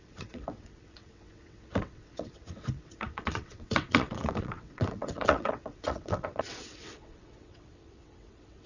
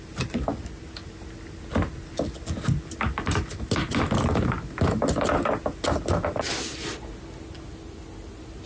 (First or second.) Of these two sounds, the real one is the second